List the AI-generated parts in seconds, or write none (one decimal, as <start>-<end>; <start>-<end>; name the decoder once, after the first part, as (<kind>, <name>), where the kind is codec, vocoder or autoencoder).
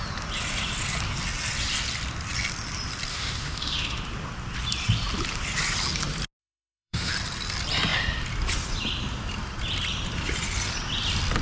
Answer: 3.1-4.0 (autoencoder, DAC-VAE); 6.4-7.1